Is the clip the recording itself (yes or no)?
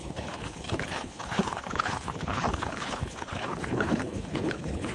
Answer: no